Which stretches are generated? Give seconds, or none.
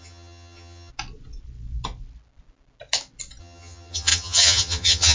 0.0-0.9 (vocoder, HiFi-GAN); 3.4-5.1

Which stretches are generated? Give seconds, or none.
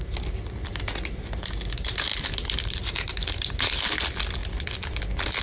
2.1-3.7 (vocoder, BigVGAN v2); 4.4-5.4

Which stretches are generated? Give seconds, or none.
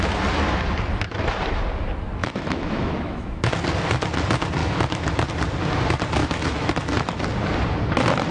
2.2-3.5 (autoencoder, DAC-VAE); 4.6-5.3; 6.2-6.7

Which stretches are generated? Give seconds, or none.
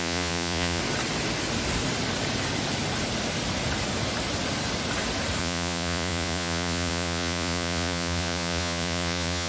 0.0-0.8 (vocoder, Vocos); 5.4-9.5